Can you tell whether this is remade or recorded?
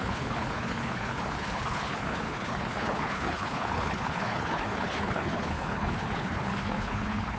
remade